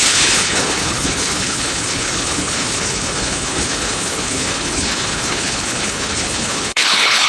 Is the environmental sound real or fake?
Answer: fake